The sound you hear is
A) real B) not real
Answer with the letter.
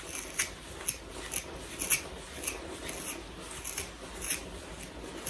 A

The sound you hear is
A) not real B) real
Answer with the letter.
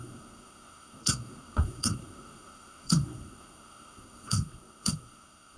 A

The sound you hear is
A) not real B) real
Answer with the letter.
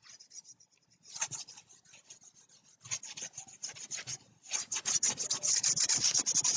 B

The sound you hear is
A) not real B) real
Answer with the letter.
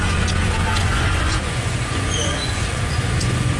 A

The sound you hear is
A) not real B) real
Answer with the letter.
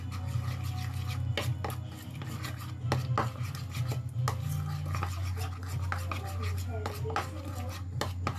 B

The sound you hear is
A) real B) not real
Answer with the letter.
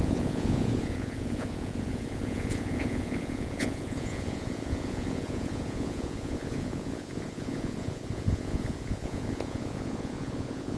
B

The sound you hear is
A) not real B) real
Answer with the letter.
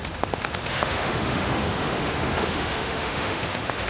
A